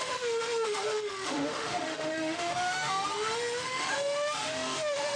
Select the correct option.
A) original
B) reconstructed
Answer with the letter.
B